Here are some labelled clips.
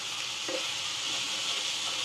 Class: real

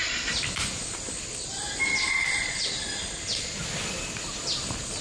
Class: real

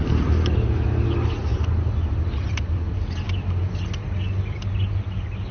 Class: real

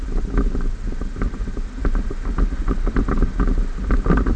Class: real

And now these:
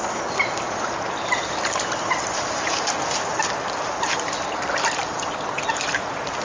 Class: real